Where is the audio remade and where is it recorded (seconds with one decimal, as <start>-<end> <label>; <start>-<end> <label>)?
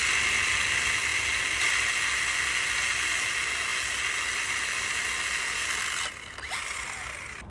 0.0-7.5 recorded